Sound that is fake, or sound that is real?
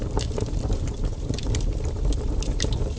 fake